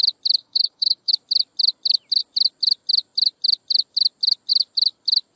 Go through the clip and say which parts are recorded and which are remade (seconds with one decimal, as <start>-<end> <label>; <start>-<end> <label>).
0.0-0.4 recorded; 0.4-1.1 remade; 1.1-5.4 recorded